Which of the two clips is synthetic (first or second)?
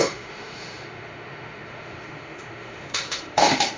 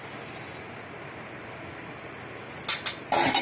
first